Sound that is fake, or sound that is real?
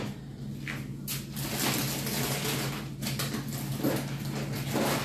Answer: real